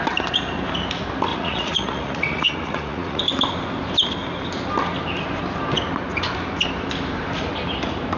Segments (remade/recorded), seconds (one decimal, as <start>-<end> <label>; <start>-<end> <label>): 0.0-1.3 recorded; 1.3-3.2 remade; 3.2-8.2 recorded